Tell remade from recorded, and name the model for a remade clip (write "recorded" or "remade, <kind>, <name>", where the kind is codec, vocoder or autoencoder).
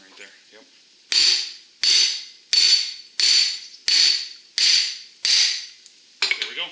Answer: recorded